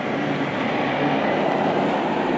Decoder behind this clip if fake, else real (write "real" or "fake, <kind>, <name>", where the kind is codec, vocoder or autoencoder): real